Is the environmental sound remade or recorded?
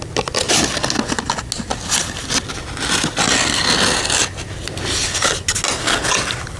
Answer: recorded